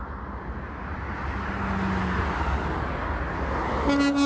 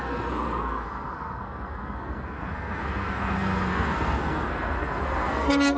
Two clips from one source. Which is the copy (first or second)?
second